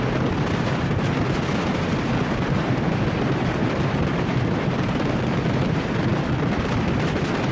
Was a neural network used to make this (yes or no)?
no